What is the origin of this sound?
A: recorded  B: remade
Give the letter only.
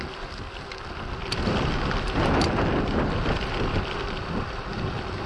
A